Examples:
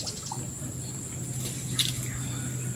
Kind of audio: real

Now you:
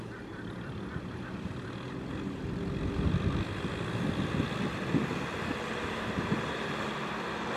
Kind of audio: real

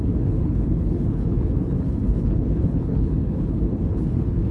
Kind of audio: fake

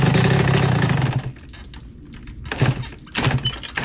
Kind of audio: real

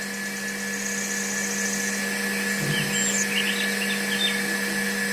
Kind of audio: real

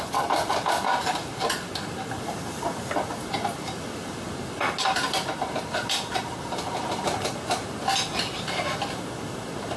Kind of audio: real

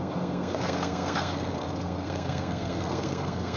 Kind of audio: fake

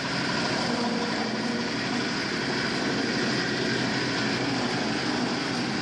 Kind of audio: real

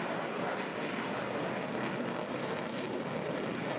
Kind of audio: real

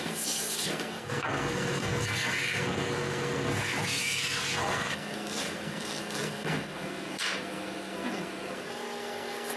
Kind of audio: fake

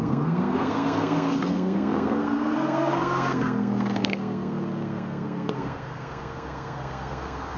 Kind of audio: fake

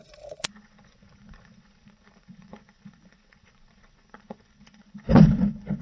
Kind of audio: fake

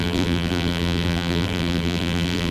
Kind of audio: fake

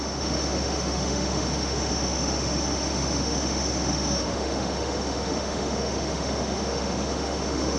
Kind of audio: fake